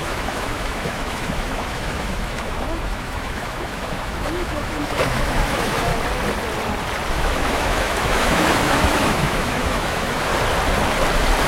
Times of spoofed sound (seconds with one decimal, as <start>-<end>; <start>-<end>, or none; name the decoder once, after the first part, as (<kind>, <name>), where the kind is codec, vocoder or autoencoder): 0.0-5.9 (autoencoder, DAC-VAE); 7.1-10.3